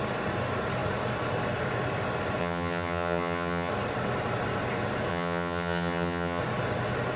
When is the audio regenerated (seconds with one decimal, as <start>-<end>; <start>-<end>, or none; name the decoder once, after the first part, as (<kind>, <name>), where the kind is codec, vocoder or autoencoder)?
2.4-3.7 (vocoder, HiFi-GAN); 5.1-6.4

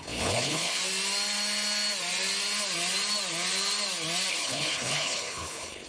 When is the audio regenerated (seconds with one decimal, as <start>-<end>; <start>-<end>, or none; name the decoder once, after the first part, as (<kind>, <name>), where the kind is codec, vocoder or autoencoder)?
0.0-0.8 (codec, HILCodec); 4.3-5.9

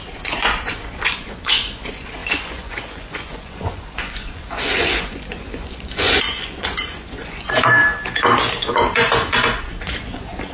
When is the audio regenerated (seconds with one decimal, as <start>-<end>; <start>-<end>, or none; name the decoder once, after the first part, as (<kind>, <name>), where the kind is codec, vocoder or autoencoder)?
0.0-7.8 (vocoder, Vocos); 8.5-10.5

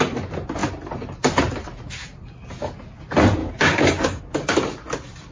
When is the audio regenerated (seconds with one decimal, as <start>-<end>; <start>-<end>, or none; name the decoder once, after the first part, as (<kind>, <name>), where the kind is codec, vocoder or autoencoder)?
3.4-4.2 (codec, DAC)

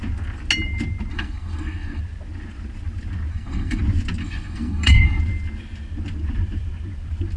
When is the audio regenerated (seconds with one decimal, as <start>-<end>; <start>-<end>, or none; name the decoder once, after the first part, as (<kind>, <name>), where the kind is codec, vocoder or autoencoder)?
1.1-2.0 (codec, SNAC); 3.3-3.8; 4.2-5.2

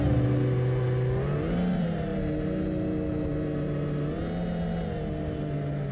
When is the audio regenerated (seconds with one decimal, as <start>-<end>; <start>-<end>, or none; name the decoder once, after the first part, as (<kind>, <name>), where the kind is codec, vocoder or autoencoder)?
none